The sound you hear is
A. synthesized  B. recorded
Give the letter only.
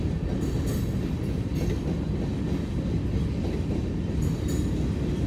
B